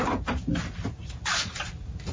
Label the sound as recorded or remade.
recorded